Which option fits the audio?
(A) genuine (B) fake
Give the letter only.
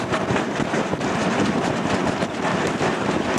A